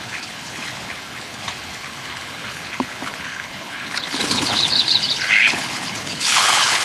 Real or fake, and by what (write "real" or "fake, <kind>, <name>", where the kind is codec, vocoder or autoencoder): fake, codec, HILCodec